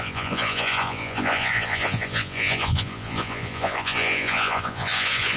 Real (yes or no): no